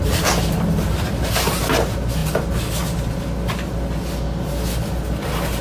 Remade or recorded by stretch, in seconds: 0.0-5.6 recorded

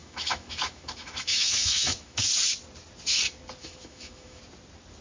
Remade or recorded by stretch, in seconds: 0.0-2.3 remade; 2.3-3.6 recorded; 3.6-4.4 remade; 4.4-5.0 recorded

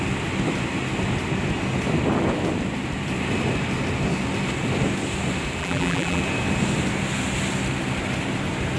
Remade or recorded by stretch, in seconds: 0.0-5.6 recorded; 5.6-6.2 remade; 6.2-8.8 recorded

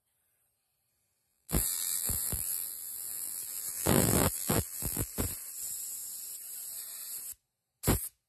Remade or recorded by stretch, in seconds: 0.0-1.3 recorded; 1.3-5.1 remade; 5.1-8.3 recorded